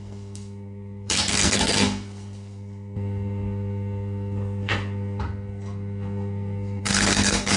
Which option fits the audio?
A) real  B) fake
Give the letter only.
B